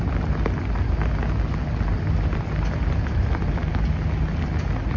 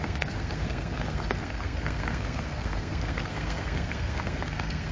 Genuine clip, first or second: first